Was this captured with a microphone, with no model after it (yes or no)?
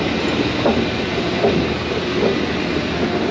yes